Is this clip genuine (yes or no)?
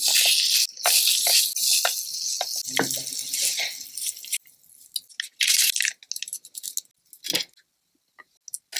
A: yes